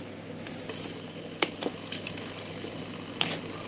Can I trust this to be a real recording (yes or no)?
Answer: yes